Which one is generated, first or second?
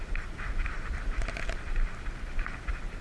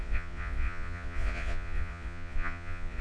second